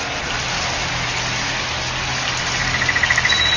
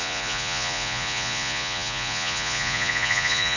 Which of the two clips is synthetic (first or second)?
second